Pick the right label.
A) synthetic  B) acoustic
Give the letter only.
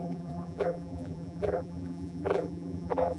A